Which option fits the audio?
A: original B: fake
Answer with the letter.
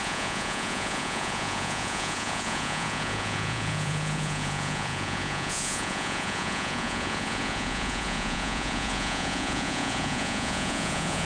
B